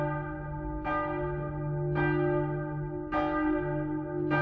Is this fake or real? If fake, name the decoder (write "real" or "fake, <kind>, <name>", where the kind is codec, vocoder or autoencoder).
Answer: real